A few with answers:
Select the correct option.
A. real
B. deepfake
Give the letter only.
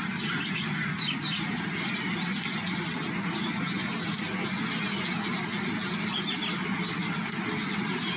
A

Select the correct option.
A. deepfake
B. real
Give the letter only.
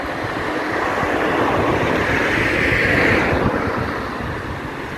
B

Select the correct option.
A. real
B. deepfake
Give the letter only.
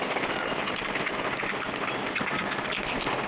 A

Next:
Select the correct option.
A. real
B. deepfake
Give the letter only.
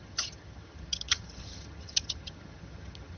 B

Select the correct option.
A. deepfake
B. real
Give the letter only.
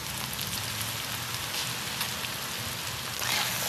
B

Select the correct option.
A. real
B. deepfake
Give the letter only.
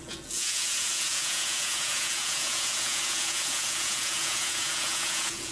B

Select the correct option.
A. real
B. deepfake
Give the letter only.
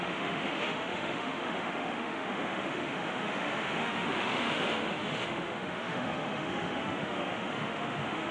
B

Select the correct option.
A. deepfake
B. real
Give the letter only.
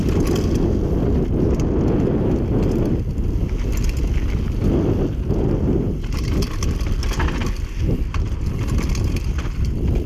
B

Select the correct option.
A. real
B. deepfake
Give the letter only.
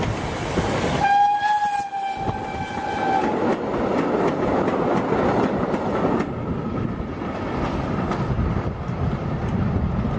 A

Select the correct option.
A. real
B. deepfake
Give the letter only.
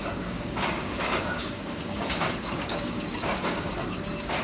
B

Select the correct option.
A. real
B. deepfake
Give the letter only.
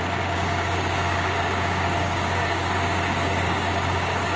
B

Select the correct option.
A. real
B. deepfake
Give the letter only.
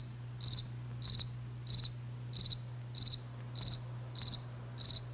A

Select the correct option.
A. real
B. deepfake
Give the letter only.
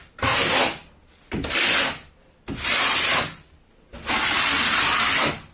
A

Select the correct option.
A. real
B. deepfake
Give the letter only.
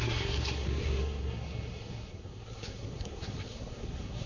B